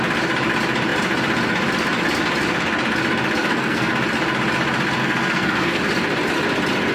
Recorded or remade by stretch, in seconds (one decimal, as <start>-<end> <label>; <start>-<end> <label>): 0.0-3.4 recorded; 3.4-3.9 remade; 3.9-5.0 recorded; 5.0-5.8 remade; 5.8-6.9 recorded